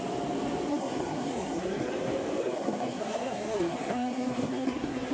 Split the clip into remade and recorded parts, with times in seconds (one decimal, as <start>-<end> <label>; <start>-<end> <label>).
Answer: 0.0-0.7 recorded; 0.7-1.9 remade; 1.9-2.4 recorded; 2.4-5.1 remade